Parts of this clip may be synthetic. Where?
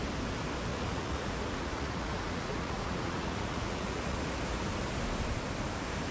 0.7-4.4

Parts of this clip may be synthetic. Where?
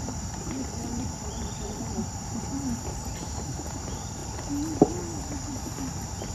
0.0-4.2